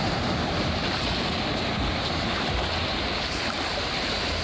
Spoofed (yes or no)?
no